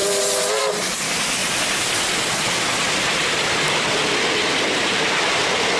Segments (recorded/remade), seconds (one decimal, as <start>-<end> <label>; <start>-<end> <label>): 0.0-5.8 recorded